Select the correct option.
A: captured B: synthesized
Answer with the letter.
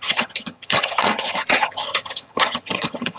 B